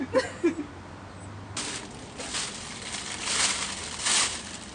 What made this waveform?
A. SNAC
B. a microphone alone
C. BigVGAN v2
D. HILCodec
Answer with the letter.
B